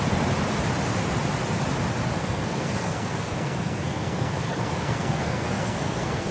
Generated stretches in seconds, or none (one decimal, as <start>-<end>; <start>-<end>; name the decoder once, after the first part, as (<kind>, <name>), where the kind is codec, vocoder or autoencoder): 2.2-6.3 (codec, SNAC)